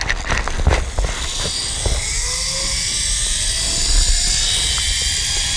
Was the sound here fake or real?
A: real